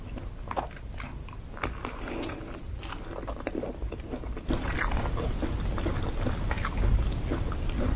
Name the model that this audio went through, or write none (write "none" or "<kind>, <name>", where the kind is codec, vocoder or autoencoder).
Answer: none